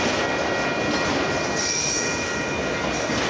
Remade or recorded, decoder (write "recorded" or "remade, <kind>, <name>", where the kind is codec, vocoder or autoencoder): recorded